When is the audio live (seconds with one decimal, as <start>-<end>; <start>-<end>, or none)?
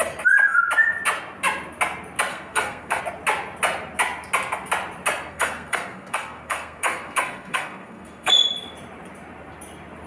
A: 0.0-2.3; 3.0-5.3; 8.3-10.1